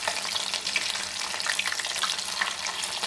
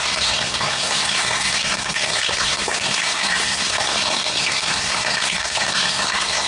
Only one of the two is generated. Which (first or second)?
second